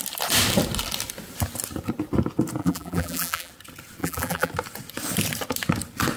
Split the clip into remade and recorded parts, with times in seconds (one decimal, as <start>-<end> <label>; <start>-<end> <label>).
0.0-2.6 recorded; 2.6-3.5 remade; 3.5-4.0 recorded; 4.0-4.5 remade; 4.5-6.2 recorded